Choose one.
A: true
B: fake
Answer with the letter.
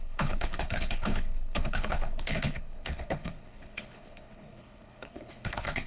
B